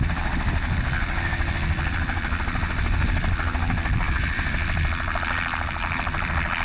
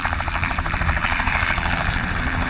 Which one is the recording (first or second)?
first